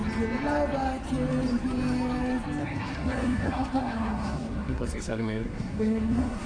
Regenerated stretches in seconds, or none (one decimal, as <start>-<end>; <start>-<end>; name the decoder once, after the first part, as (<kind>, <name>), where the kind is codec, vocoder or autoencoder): 2.6-6.5 (codec, SNAC)